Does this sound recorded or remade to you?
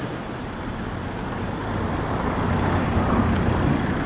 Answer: recorded